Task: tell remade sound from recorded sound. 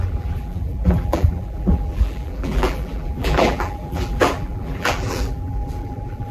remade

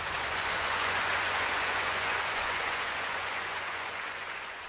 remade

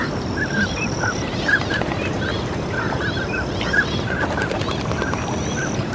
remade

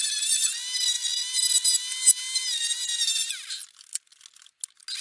recorded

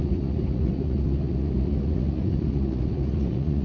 remade